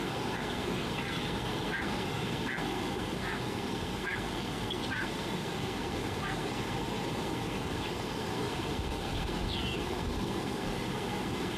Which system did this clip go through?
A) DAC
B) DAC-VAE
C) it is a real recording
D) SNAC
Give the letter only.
D